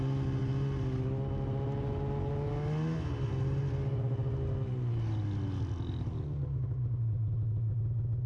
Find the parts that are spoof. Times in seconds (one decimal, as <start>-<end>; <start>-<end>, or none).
none